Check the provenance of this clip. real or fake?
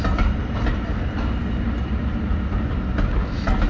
real